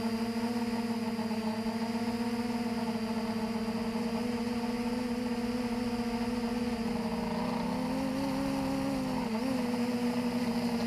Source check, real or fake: real